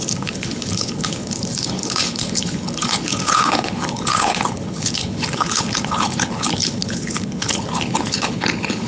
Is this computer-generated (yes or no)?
yes